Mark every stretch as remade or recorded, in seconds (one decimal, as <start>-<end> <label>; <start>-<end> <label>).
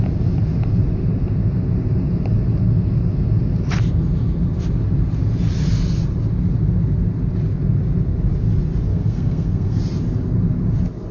0.0-8.9 recorded; 8.9-9.8 remade; 9.8-11.1 recorded